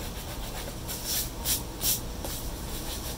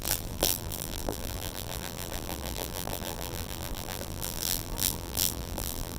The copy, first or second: second